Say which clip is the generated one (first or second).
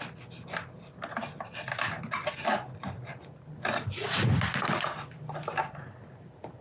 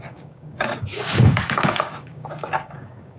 second